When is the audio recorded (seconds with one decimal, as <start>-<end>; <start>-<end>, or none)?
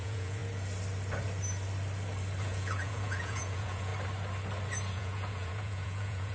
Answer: 0.4-2.4; 3.9-4.9